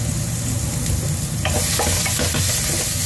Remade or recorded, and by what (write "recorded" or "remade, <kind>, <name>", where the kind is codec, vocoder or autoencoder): recorded